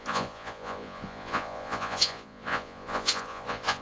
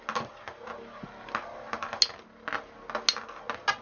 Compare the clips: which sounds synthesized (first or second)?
first